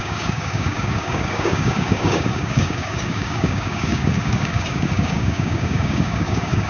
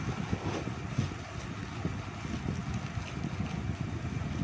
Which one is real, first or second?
second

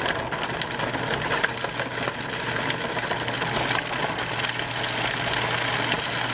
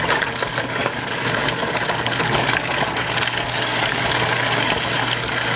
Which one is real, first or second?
first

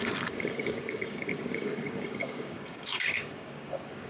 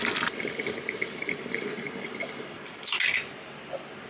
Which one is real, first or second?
second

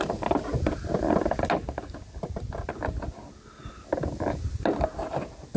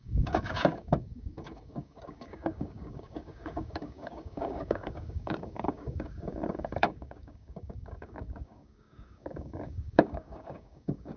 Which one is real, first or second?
first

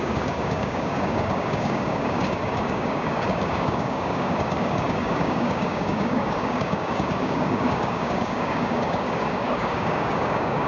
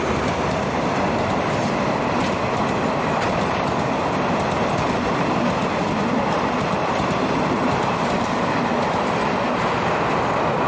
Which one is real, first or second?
second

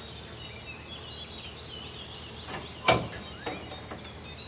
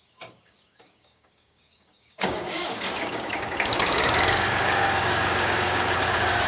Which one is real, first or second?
first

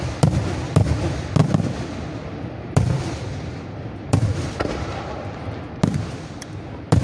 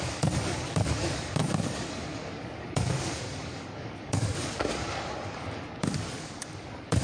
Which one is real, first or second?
first